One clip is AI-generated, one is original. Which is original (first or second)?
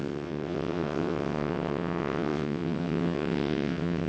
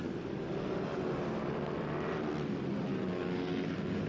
second